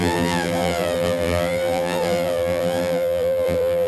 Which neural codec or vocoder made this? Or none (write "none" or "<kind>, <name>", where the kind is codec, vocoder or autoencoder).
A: vocoder, BigVGAN v2